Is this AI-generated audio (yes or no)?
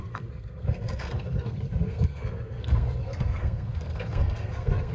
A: yes